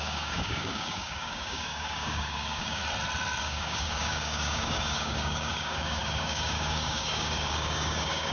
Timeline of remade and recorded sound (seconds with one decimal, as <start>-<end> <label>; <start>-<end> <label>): 0.0-2.8 remade; 2.8-3.4 recorded; 3.4-8.3 remade